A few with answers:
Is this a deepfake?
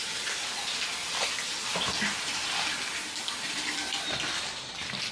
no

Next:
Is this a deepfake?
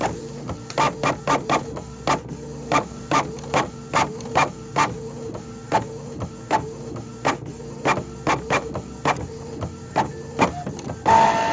no